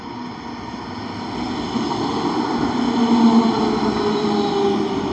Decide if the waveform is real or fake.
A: real